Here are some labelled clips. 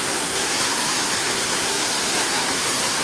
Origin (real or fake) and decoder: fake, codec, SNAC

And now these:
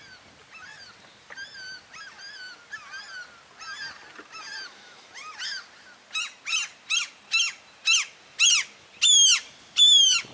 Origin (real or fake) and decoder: real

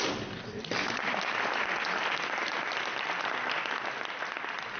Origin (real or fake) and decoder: real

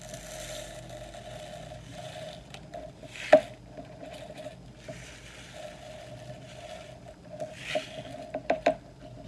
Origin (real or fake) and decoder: real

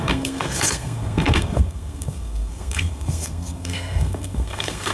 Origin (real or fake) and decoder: fake, codec, SNAC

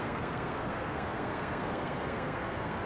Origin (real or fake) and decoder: fake, codec, SNAC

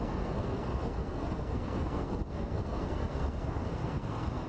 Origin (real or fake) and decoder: fake, codec, SNAC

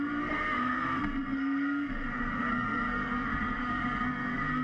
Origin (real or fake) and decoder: fake, codec, SNAC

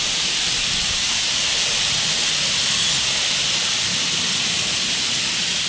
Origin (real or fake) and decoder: real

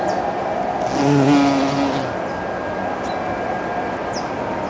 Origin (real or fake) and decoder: real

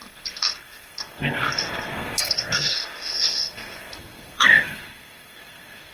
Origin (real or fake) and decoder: fake, codec, SNAC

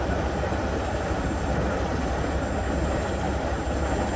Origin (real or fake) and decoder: real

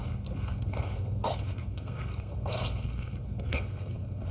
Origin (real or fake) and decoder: fake, codec, SNAC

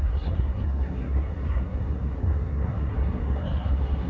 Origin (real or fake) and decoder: fake, codec, SNAC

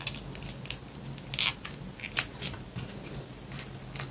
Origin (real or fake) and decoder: real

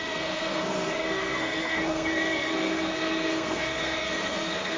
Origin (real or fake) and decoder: fake, codec, SNAC